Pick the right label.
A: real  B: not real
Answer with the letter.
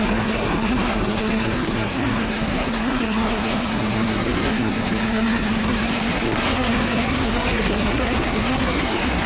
B